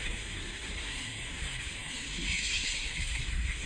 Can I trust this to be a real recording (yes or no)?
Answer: no